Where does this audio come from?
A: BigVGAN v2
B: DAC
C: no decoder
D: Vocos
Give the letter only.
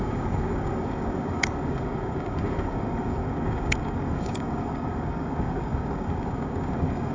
B